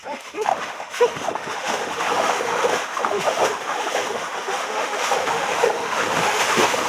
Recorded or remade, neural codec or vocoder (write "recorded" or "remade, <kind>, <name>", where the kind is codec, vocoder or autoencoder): remade, autoencoder, DAC-VAE